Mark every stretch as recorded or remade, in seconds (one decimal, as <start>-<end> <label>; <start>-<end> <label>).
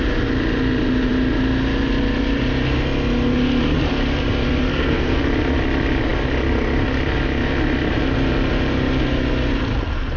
0.0-4.7 recorded; 4.7-5.2 remade; 5.2-10.2 recorded